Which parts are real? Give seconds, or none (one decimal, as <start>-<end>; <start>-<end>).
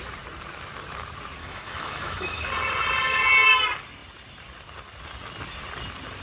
0.0-1.4; 2.4-6.2